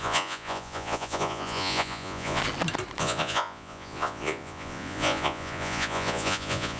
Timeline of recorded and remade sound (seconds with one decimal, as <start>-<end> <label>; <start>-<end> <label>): 0.0-2.4 remade; 2.4-3.0 recorded; 3.0-6.8 remade